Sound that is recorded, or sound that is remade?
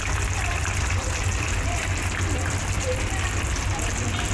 remade